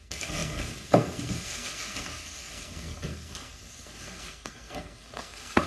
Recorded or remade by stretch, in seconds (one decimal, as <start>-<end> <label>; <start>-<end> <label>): 0.0-5.7 remade